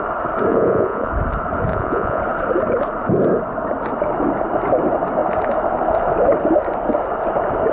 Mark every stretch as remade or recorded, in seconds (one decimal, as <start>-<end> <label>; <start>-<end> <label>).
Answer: 0.0-0.5 recorded; 0.5-1.1 remade; 1.1-1.7 recorded; 1.7-2.2 remade; 2.2-7.7 recorded